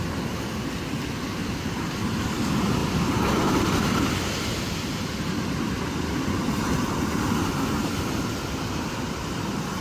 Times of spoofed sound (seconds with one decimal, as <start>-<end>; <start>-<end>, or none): 1.4-2.2; 2.8-6.6

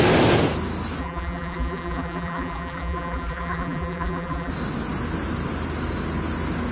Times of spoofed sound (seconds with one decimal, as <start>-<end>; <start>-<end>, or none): 1.0-4.5

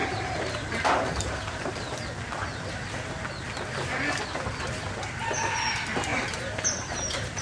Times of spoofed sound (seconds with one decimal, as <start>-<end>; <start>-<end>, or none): 0.0-1.6; 6.1-7.4

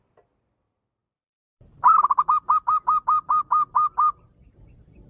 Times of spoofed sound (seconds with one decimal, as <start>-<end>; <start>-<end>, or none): 1.0-1.9

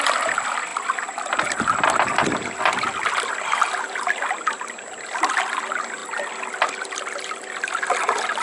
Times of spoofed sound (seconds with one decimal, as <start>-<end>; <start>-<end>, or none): none

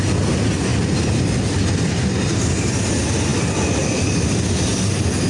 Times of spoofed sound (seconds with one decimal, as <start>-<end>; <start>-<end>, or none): 0.7-2.0

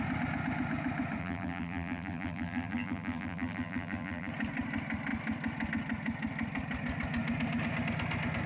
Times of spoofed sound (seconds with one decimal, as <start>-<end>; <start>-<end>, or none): 1.2-4.3